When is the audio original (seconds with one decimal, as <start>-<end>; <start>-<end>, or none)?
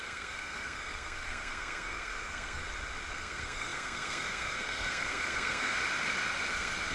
2.6-3.1; 5.8-6.5